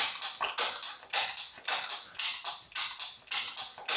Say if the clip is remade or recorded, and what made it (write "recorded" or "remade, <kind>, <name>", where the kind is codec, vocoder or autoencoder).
recorded